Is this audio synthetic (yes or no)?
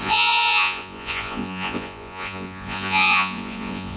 yes